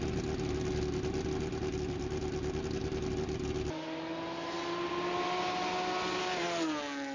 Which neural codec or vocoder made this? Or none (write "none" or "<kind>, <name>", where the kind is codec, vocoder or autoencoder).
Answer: none